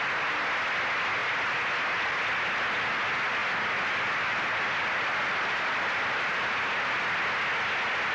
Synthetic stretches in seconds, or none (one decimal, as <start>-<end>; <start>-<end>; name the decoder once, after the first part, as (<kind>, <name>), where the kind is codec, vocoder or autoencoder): 3.4-7.0 (vocoder, BigVGAN v2)